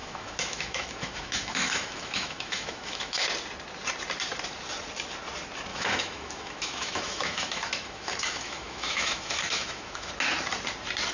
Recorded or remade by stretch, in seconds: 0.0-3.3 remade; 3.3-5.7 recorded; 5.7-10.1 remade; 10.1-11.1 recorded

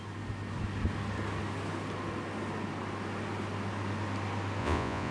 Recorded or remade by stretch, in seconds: 0.0-4.6 recorded; 4.6-5.1 remade